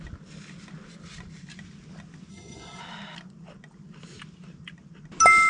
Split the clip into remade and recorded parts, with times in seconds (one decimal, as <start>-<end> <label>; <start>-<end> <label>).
0.0-2.3 recorded; 2.3-2.8 remade; 2.8-5.5 recorded